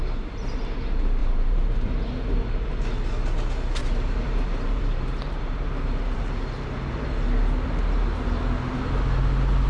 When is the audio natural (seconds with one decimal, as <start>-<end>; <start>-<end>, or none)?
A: 0.0-1.2; 2.5-3.8; 6.2-9.7